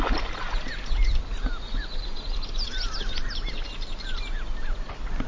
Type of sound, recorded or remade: recorded